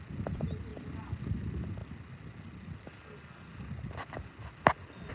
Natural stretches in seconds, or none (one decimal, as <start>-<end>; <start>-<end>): 0.0-5.1